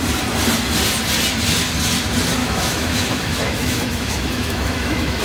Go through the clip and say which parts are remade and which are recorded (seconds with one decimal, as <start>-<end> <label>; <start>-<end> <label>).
0.0-2.4 recorded; 2.4-5.2 remade